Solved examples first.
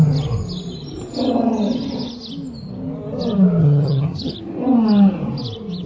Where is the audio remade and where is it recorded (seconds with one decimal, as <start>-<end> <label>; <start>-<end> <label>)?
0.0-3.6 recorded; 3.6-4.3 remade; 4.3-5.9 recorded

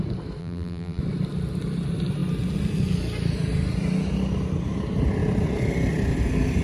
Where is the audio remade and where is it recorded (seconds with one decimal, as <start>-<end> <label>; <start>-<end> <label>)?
0.0-0.4 recorded; 0.4-1.0 remade; 1.0-6.6 recorded

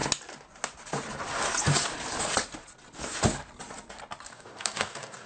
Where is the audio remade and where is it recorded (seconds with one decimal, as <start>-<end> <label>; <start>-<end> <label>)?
0.0-4.3 recorded; 4.3-5.3 remade

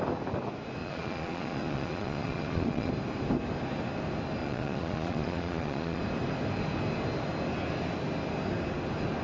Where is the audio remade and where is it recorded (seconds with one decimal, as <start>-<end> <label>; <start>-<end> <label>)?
0.0-0.8 recorded; 0.8-2.9 remade; 2.9-4.4 recorded; 4.4-6.0 remade; 6.0-9.2 recorded